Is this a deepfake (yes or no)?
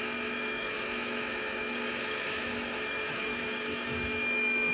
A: yes